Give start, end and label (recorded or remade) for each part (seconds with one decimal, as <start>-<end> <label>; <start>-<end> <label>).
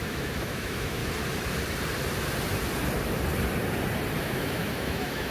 0.0-1.0 remade; 1.0-4.2 recorded; 4.2-5.3 remade